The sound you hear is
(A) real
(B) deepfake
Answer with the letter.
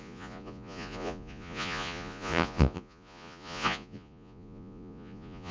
B